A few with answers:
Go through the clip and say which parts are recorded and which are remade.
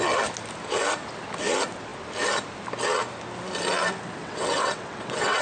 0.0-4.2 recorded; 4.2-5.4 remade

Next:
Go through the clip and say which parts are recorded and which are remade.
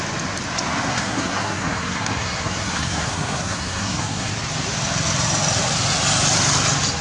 0.0-0.9 recorded; 0.9-4.3 remade; 4.3-7.0 recorded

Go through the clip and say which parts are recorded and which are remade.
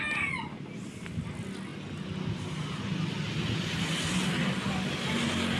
0.0-5.6 recorded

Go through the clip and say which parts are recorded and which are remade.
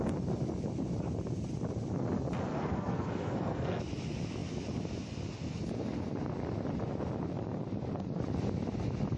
0.0-2.5 recorded; 2.5-3.8 remade; 3.8-9.2 recorded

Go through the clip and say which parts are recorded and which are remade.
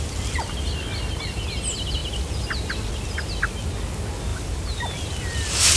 0.0-4.3 recorded; 4.3-5.0 remade; 5.0-5.8 recorded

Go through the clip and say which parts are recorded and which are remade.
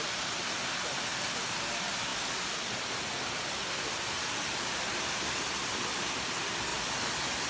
0.0-2.1 recorded; 2.1-5.8 remade; 5.8-6.7 recorded; 6.7-7.5 remade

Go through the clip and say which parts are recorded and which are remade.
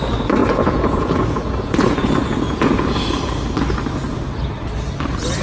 0.0-0.4 recorded; 0.4-3.2 remade; 3.2-5.4 recorded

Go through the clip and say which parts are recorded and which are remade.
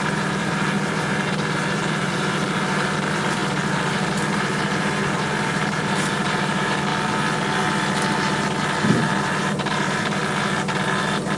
0.0-6.9 remade; 6.9-9.2 recorded; 9.2-10.2 remade; 10.2-11.4 recorded